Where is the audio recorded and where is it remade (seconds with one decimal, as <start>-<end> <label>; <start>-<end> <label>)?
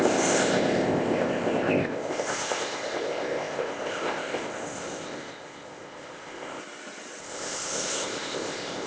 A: 0.0-6.6 remade; 6.6-7.2 recorded; 7.2-8.9 remade